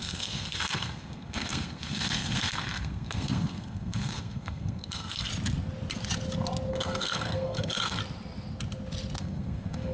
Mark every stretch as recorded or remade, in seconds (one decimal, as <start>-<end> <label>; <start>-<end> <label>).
0.0-5.3 remade; 5.3-6.7 recorded; 6.7-8.0 remade; 8.0-9.2 recorded; 9.2-9.9 remade